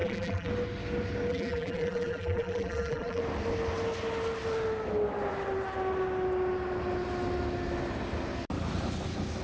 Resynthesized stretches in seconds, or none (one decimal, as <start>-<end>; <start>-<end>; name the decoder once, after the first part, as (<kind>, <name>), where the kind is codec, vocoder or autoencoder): 0.0-0.5 (vocoder, BigVGAN v2); 1.3-3.2